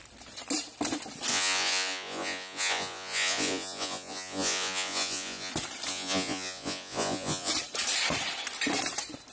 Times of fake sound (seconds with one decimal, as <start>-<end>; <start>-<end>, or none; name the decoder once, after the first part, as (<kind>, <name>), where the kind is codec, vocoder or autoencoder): 1.3-5.5 (vocoder, Vocos); 5.9-7.5